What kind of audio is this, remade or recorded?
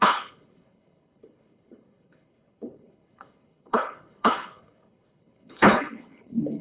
remade